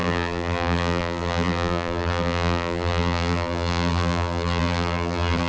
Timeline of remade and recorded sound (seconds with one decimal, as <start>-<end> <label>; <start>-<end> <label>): 0.0-5.5 remade